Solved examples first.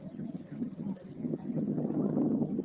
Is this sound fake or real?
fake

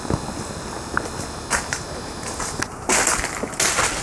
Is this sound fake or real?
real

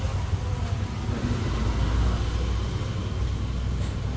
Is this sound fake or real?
real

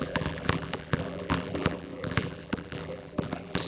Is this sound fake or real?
fake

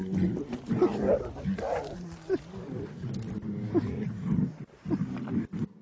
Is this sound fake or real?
real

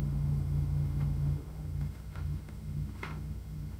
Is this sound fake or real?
fake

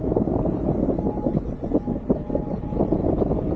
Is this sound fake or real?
real